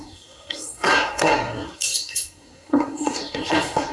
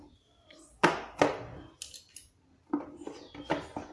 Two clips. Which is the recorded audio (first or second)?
second